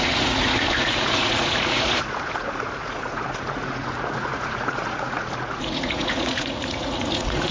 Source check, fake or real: fake